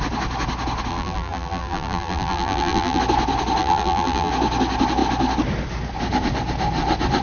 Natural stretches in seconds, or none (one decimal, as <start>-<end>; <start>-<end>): 0.0-0.9; 3.0-3.6; 4.3-7.2